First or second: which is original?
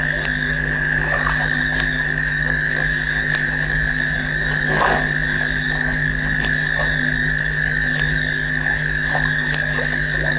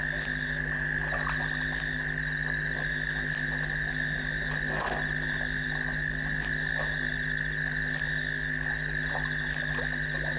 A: second